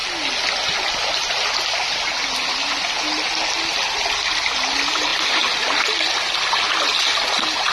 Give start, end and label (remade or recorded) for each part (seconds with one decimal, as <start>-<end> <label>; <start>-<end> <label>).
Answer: 0.0-7.7 recorded